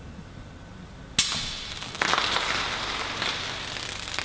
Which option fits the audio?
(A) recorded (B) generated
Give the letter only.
A